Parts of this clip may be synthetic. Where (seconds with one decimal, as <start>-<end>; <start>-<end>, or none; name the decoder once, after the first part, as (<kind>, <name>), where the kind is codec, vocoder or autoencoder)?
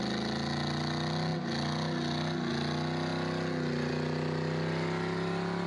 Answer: none